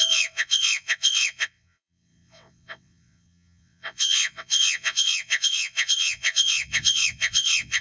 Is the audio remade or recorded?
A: remade